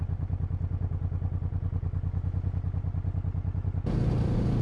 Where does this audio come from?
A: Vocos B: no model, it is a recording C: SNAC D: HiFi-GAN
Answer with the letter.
B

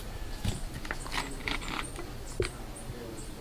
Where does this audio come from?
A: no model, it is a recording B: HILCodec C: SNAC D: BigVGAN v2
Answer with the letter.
A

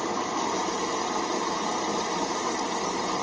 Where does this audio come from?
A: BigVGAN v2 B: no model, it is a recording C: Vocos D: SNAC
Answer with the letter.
A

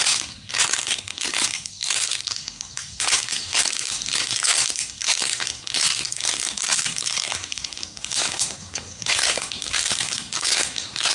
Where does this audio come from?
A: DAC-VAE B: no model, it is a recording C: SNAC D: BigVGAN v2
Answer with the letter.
C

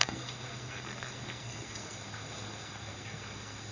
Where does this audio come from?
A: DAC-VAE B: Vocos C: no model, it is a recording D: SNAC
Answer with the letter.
D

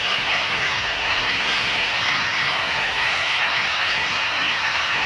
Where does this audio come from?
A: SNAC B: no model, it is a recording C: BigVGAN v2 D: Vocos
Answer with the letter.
A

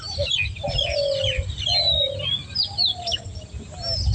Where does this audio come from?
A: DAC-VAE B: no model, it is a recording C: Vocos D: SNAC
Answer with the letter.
B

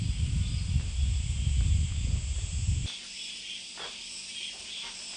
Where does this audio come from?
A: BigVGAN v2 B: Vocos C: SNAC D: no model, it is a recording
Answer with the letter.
D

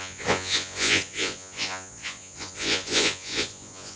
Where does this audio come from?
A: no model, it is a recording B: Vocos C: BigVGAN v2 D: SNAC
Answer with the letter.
B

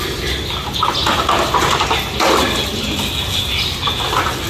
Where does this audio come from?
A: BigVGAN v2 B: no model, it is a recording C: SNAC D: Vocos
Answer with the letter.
B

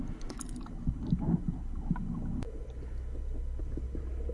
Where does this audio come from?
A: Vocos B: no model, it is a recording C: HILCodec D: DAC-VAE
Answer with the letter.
B